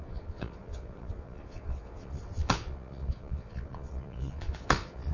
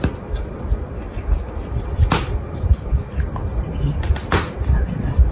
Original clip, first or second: second